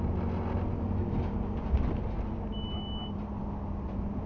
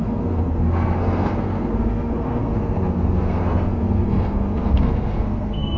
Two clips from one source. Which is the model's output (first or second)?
second